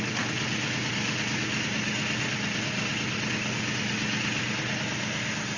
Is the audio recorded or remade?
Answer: recorded